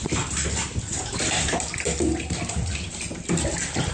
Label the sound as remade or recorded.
recorded